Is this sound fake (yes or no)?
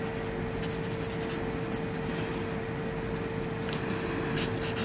no